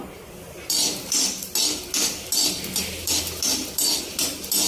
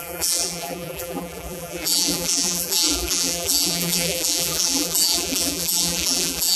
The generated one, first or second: second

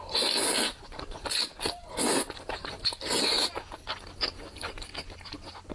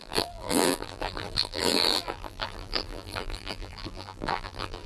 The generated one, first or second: second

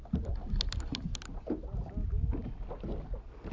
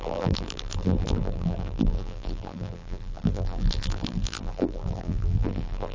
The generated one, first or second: second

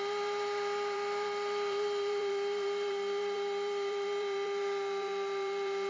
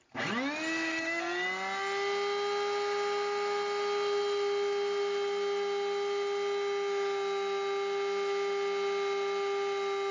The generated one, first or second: first